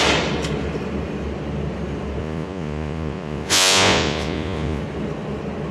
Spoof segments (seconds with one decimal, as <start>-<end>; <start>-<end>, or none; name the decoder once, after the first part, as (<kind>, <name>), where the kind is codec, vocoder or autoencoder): 2.2-4.8 (vocoder, Vocos)